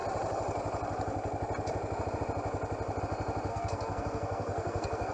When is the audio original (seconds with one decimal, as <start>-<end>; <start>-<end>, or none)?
0.0-3.5